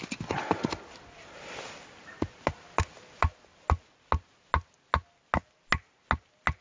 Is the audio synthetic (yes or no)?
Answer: no